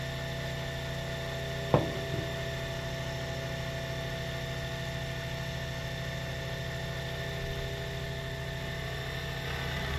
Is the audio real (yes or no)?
yes